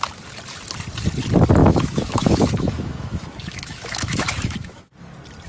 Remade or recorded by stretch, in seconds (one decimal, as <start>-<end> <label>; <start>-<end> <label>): 0.0-1.6 recorded; 1.6-4.9 remade; 4.9-5.5 recorded